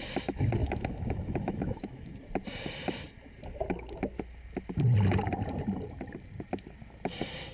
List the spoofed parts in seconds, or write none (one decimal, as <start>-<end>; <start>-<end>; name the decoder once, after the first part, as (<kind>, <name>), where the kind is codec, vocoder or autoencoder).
0.6-2.1 (autoencoder, DAC-VAE)